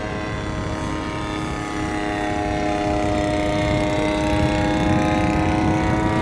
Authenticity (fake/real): real